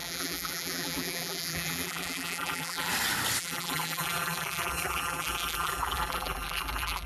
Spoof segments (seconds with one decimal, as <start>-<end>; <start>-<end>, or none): 0.0-2.9; 3.4-7.1